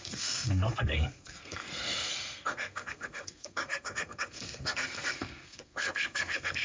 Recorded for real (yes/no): no